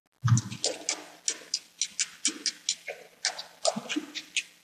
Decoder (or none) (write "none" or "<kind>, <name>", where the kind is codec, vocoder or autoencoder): none